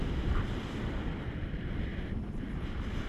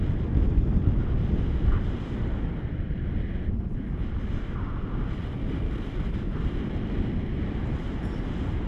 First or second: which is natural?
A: second